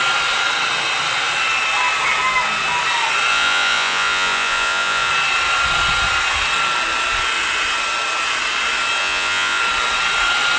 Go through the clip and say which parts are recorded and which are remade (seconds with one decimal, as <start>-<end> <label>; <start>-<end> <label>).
0.0-3.3 recorded; 3.3-5.1 remade; 5.1-9.0 recorded; 9.0-9.6 remade; 9.6-10.6 recorded